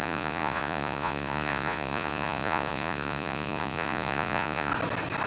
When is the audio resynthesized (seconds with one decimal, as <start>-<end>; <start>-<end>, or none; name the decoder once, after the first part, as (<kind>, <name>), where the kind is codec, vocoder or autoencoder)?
0.0-4.7 (vocoder, Vocos)